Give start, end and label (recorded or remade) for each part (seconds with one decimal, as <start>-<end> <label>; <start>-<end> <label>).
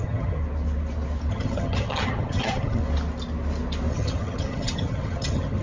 0.0-0.4 remade; 0.4-1.3 recorded; 1.3-2.8 remade; 2.8-3.9 recorded; 3.9-5.6 remade